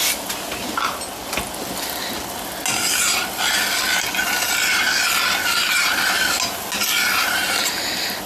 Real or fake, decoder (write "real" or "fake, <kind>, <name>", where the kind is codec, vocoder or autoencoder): real